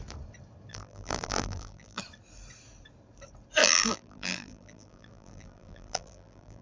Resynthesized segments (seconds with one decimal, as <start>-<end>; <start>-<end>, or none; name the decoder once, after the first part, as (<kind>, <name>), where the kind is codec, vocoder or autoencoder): 0.7-2.0 (vocoder, BigVGAN v2); 3.6-6.6